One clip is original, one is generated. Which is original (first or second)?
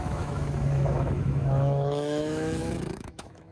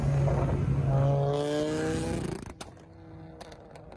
second